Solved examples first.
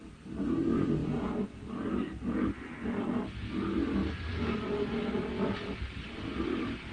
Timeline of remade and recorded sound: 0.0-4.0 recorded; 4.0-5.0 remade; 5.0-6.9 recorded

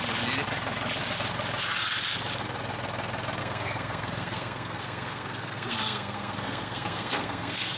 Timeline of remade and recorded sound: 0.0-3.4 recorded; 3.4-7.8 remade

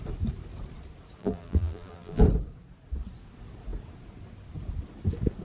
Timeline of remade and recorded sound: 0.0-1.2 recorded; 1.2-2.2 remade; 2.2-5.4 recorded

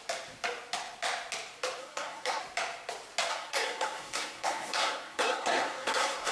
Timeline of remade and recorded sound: 0.0-1.8 recorded; 1.8-2.4 remade; 2.4-3.3 recorded; 3.3-6.3 remade

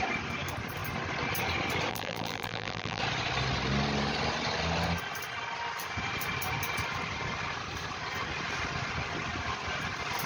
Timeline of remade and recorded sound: 0.0-1.9 recorded; 1.9-3.0 remade; 3.0-10.3 recorded